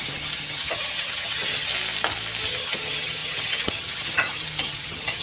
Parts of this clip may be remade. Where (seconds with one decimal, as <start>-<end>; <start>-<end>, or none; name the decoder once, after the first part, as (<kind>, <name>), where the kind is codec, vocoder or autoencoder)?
0.0-1.7 (vocoder, HiFi-GAN); 2.5-5.2